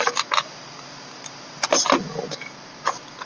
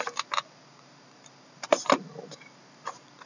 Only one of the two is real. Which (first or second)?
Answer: first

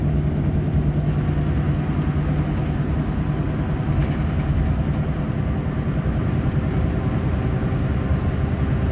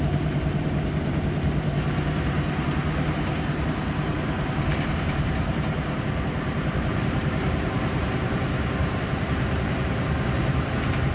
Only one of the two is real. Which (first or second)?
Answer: first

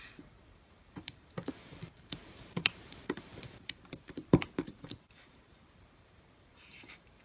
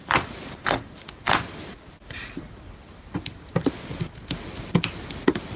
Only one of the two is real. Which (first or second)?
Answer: second